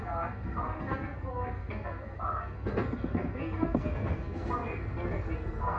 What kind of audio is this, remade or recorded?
remade